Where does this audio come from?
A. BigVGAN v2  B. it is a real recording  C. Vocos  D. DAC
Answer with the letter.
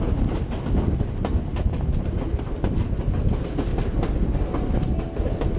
B